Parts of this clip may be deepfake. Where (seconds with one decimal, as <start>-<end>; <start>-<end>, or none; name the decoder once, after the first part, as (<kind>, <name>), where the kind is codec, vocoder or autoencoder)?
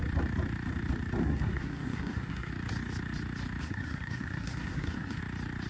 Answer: 1.2-2.5 (codec, SNAC); 3.6-5.2